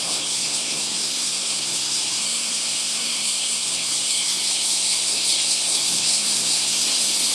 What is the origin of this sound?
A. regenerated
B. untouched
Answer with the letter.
A